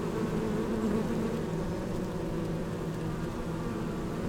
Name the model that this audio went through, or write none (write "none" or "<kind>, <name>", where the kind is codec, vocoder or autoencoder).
none